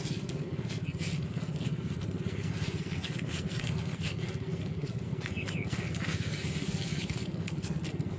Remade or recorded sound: remade